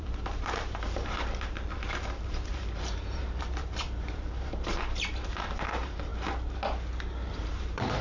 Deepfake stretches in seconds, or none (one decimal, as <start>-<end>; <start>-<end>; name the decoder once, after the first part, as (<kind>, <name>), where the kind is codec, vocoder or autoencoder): 0.0-6.1 (vocoder, BigVGAN v2); 7.3-8.0